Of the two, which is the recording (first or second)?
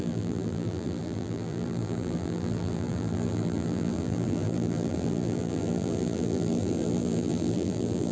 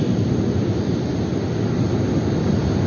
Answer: second